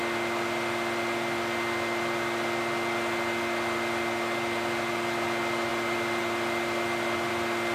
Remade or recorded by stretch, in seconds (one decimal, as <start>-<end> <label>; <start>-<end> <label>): 0.0-7.7 recorded